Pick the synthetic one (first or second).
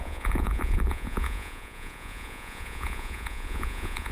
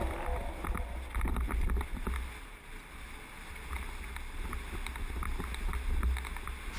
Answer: first